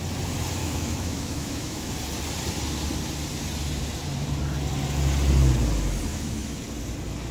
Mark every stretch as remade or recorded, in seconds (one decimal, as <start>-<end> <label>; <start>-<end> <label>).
0.0-0.6 recorded; 0.6-1.9 remade; 1.9-6.1 recorded; 6.1-6.6 remade; 6.6-7.3 recorded